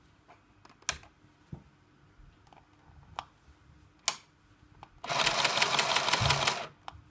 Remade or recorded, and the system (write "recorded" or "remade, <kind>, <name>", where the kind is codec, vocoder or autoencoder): recorded